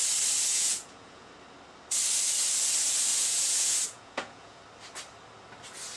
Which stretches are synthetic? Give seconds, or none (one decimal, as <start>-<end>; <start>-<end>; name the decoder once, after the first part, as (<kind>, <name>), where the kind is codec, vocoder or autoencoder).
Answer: 0.5-1.3 (vocoder, Vocos); 3.1-4.6